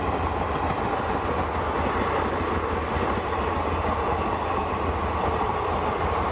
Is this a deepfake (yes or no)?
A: no